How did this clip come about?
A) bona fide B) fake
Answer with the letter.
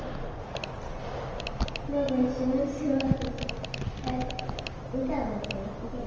A